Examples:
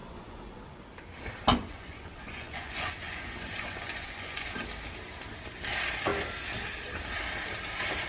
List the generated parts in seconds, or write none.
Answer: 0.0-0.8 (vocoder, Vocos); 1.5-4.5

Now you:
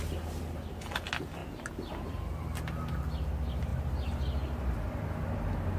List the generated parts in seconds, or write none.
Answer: none

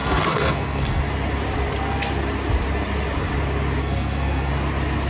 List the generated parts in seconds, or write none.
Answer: 0.0-1.0 (codec, SNAC); 3.8-4.5

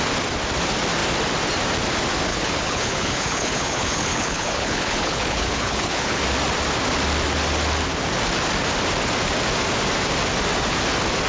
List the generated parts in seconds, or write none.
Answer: 2.3-6.2 (codec, HILCodec)

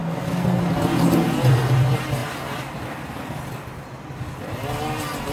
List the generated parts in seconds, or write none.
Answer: 0.0-0.6 (codec, SNAC)

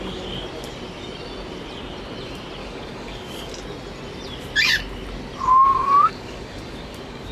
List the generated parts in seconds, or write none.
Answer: 2.6-3.5 (codec, DAC); 5.7-7.3